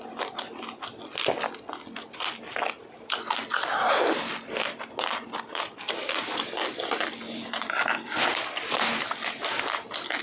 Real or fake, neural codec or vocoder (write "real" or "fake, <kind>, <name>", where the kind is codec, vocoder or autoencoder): real